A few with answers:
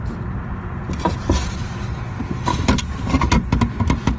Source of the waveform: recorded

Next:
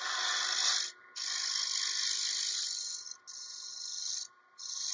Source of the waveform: recorded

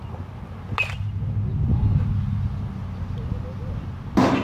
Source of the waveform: recorded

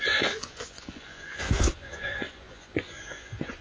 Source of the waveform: remade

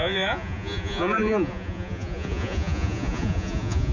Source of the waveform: remade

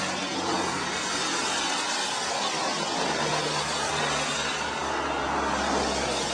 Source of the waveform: recorded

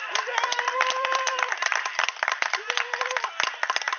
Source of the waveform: remade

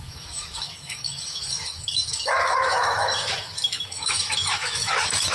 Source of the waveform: remade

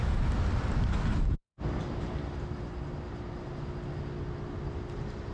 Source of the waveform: recorded